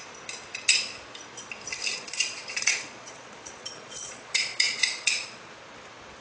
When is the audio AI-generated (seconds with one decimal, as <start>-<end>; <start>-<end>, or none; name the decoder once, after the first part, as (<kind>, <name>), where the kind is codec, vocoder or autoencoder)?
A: 1.9-5.6 (vocoder, Vocos)